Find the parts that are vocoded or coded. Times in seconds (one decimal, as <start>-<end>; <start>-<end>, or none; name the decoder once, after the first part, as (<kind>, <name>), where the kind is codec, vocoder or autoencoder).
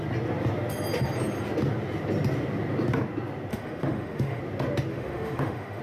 3.5-4.4 (autoencoder, DAC-VAE); 4.9-5.8